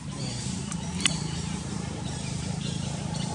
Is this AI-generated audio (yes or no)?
yes